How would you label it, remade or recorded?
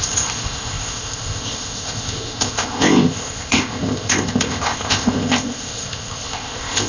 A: remade